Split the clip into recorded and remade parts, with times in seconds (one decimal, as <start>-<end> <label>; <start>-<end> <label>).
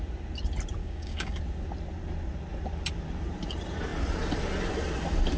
0.0-0.8 recorded; 0.8-1.4 remade; 1.4-5.4 recorded